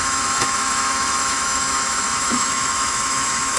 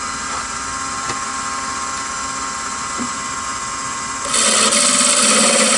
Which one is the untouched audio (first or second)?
second